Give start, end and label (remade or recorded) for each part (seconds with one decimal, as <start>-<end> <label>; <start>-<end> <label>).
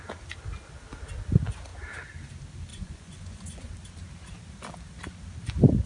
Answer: 0.0-2.7 recorded; 2.7-3.7 remade; 3.7-5.9 recorded